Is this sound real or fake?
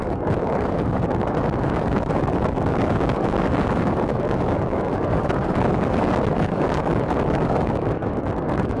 fake